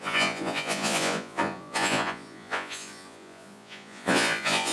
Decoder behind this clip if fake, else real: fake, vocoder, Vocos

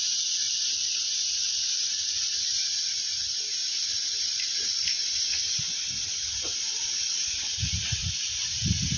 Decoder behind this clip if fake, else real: real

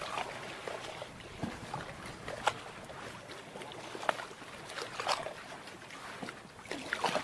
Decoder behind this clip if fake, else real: real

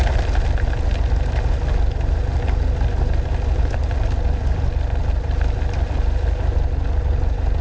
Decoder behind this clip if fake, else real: real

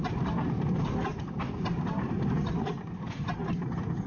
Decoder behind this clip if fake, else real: fake, vocoder, BigVGAN v2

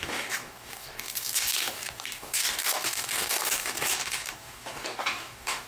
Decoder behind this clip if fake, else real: fake, codec, DAC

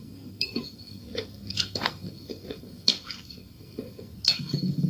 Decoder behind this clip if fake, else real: fake, codec, SNAC